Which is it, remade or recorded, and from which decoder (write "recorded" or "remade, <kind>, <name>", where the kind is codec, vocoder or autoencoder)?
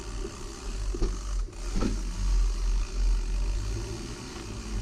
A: recorded